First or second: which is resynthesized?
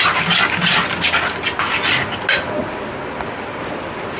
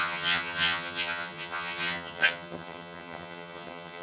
second